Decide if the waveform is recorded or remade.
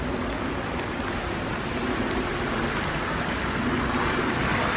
recorded